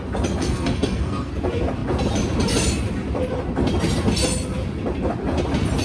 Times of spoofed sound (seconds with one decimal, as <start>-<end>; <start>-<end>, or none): 0.4-1.3